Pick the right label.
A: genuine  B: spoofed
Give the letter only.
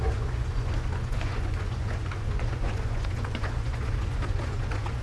B